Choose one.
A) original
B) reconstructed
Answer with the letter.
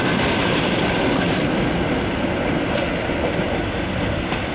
A